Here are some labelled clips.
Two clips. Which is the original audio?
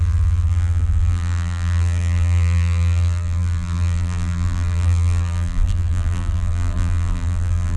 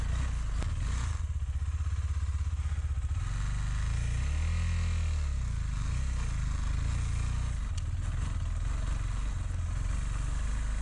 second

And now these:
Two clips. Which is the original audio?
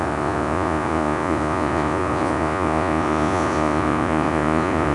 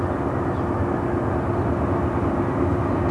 second